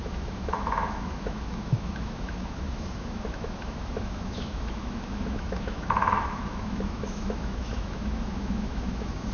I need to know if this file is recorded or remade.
remade